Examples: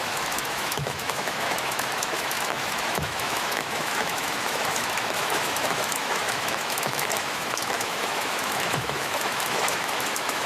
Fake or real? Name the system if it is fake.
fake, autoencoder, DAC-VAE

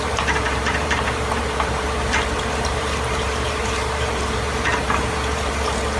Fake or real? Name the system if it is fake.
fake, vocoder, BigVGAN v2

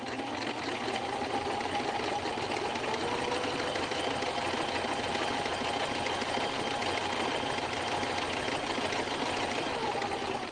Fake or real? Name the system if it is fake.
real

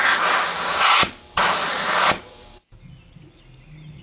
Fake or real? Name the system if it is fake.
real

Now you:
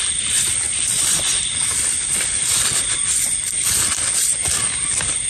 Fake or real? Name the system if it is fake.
real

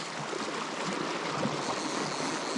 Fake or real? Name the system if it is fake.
real